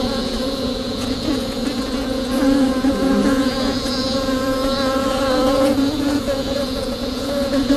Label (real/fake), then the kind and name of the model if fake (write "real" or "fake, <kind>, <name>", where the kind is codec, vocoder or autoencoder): fake, vocoder, Vocos